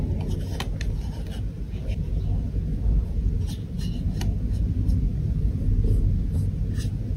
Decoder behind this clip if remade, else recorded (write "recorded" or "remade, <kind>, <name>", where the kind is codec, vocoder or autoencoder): recorded